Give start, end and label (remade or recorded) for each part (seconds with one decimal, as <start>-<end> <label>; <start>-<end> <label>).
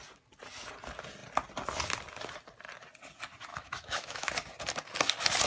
0.0-3.5 recorded; 3.5-4.3 remade; 4.3-5.5 recorded